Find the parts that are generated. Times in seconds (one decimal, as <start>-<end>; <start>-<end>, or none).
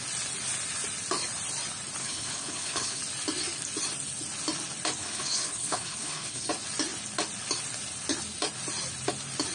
2.0-3.0; 5.0-6.5